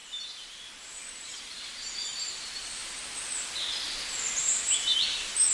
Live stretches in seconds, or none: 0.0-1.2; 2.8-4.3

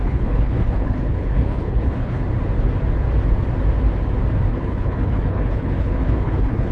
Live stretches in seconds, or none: 2.2-4.5

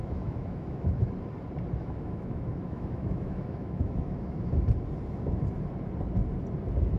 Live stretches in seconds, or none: 1.1-1.8; 4.5-7.0

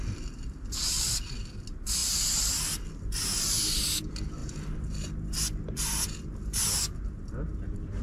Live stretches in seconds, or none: 0.0-4.4; 5.1-8.0

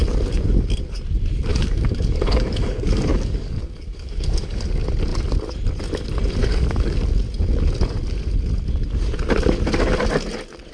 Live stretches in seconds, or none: 0.0-1.5; 4.6-6.4; 7.0-10.7

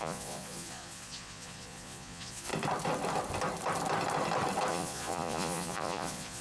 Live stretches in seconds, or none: 2.5-4.7

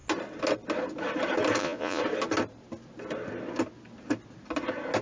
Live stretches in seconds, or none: 0.0-1.6; 2.0-5.0